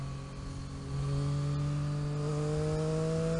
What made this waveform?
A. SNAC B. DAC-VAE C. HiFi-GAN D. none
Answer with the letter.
D